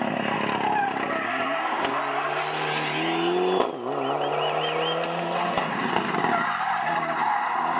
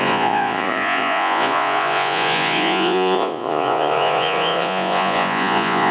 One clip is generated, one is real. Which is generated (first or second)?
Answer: second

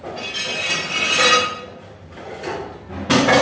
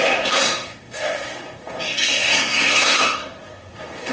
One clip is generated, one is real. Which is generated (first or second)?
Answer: second